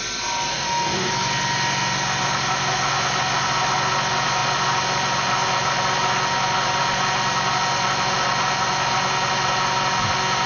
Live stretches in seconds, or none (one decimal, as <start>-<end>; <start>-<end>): 0.0-0.5; 1.1-10.5